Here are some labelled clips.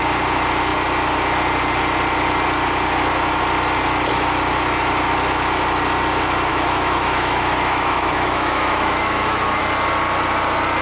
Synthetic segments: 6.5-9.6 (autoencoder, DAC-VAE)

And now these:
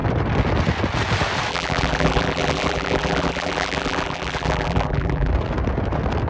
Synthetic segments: 1.5-5.3 (vocoder, BigVGAN v2)

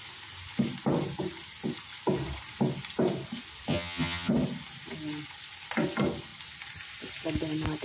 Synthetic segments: 3.7-4.3 (vocoder, HiFi-GAN)

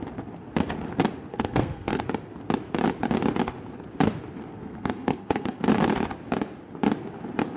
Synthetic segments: 1.3-2.0 (codec, SNAC); 4.5-5.6

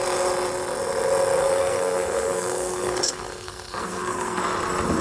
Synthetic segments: 1.4-4.4 (codec, SNAC)

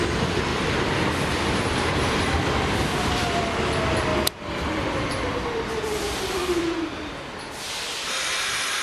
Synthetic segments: 0.5-3.4 (vocoder, BigVGAN v2); 4.1-7.1

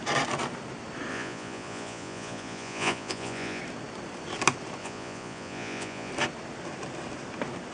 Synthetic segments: 1.1-3.6 (vocoder, Vocos); 4.8-6.1